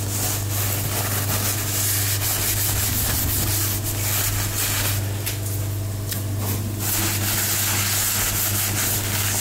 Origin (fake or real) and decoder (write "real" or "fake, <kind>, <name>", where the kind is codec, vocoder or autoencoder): real